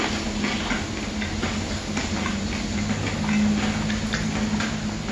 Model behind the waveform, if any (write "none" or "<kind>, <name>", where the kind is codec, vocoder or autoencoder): none